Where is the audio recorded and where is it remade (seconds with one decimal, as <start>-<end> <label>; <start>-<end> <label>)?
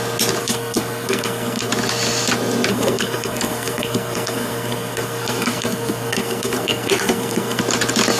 0.0-0.4 recorded; 0.4-1.7 remade; 1.7-2.7 recorded; 2.7-7.6 remade; 7.6-8.2 recorded